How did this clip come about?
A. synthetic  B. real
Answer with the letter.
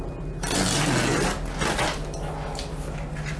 B